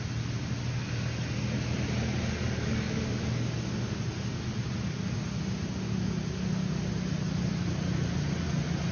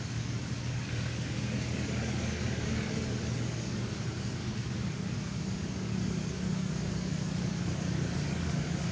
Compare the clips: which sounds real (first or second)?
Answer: first